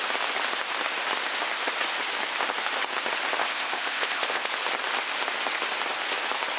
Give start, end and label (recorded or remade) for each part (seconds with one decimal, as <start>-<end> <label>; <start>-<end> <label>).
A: 0.0-3.4 recorded; 3.4-4.5 remade; 4.5-6.6 recorded